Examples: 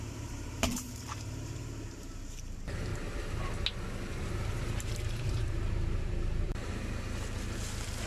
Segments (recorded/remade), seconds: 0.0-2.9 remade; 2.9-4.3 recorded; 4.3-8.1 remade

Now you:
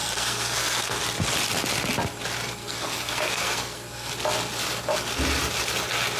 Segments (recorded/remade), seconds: 0.0-1.0 remade; 1.0-2.6 recorded; 2.6-4.1 remade; 4.1-6.2 recorded

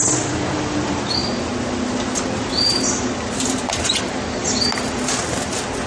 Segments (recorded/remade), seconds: 0.0-5.9 recorded

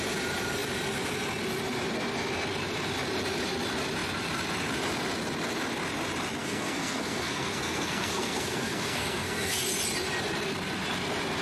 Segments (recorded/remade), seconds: 0.0-6.4 recorded; 6.4-9.6 remade; 9.6-11.4 recorded

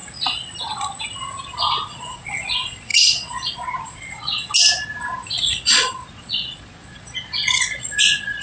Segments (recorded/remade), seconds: 0.0-1.4 recorded; 1.4-4.5 remade; 4.5-5.4 recorded; 5.4-8.4 remade

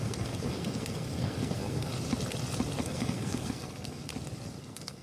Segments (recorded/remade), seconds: 0.0-1.9 remade; 1.9-2.8 recorded; 2.8-4.1 remade; 4.1-4.6 recorded; 4.6-5.0 remade

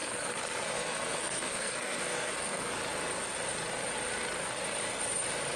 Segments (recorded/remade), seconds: 0.0-2.7 remade; 2.7-5.6 recorded

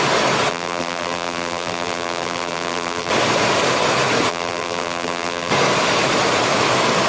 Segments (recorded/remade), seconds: 0.0-0.5 recorded; 0.5-3.1 remade; 3.1-4.3 recorded; 4.3-5.5 remade; 5.5-7.1 recorded